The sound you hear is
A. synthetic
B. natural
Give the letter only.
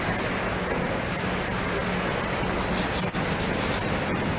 B